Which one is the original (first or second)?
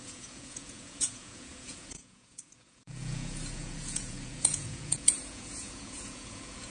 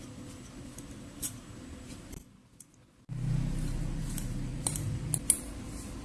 second